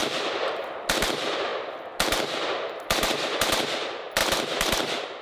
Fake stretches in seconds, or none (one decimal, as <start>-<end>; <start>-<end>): 0.0-0.6